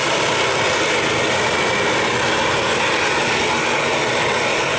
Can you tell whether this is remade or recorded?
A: recorded